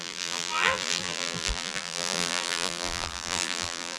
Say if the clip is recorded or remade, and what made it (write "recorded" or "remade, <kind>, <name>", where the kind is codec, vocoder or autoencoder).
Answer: remade, vocoder, BigVGAN v2